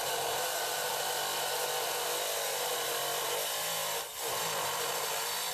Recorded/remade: remade